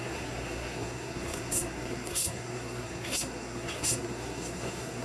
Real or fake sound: fake